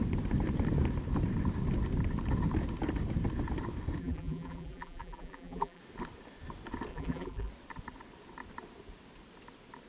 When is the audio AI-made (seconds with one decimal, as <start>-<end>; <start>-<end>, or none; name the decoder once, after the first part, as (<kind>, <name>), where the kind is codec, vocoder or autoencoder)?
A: 4.0-5.8 (vocoder, BigVGAN v2); 6.9-7.5